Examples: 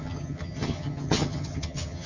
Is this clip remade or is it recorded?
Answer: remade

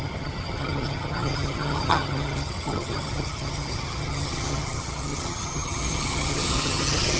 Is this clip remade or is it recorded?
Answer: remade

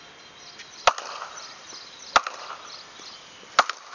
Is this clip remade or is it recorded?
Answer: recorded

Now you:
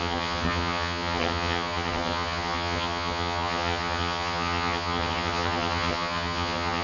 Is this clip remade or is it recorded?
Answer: remade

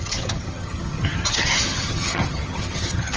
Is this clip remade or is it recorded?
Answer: remade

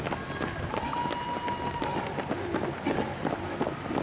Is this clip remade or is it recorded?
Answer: recorded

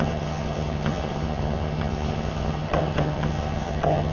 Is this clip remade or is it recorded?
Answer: remade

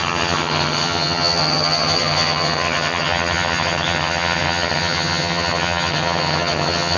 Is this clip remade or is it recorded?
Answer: remade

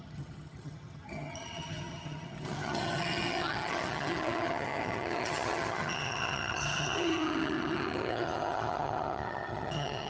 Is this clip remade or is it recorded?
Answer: remade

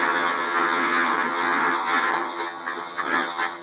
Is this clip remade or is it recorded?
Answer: remade